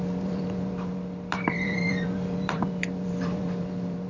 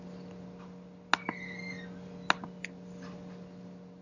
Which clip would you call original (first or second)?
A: second